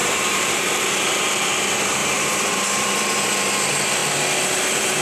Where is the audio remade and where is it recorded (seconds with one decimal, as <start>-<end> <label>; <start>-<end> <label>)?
0.0-0.8 remade; 0.8-2.0 recorded; 2.0-3.4 remade; 3.4-5.0 recorded